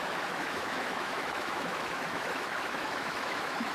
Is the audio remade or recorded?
remade